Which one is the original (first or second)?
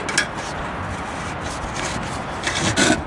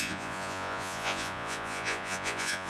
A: first